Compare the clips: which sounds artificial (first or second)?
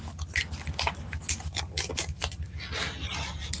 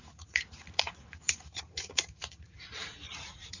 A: second